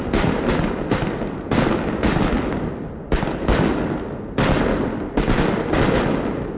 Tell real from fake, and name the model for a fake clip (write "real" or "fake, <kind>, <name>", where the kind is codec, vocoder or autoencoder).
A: real